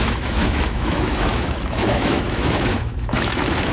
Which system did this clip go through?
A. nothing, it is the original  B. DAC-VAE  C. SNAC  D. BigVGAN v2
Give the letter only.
B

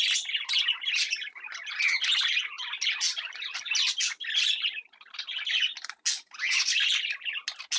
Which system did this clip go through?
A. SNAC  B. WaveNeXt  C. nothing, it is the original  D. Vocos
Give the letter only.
C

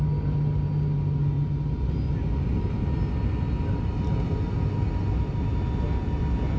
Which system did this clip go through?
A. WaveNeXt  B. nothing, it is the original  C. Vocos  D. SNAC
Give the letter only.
B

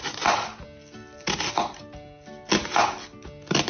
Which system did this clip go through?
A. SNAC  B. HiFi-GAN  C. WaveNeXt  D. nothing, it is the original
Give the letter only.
D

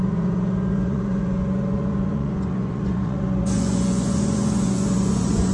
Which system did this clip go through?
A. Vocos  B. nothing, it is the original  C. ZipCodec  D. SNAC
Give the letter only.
A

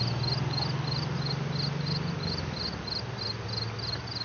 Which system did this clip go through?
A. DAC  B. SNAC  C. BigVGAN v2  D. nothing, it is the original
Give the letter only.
D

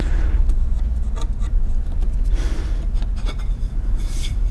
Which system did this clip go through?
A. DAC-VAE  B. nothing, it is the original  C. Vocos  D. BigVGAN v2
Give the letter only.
B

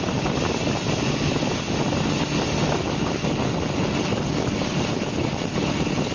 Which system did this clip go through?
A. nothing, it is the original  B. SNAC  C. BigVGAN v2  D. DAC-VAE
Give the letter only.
A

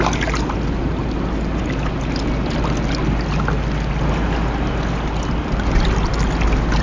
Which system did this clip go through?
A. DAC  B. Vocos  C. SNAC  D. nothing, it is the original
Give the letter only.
D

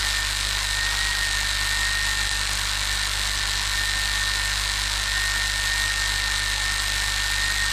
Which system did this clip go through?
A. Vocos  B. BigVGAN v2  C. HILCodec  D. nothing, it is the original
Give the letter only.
D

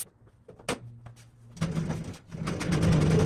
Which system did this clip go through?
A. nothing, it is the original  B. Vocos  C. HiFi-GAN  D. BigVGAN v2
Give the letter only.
A